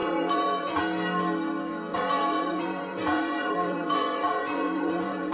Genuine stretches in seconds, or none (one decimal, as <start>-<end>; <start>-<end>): 0.8-1.9